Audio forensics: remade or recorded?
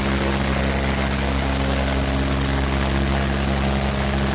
recorded